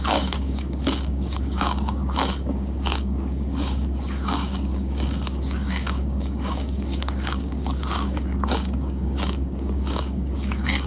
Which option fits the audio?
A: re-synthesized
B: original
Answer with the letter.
A